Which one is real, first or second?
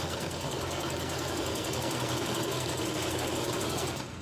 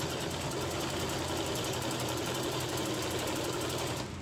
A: second